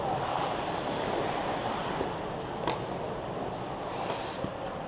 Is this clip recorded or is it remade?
recorded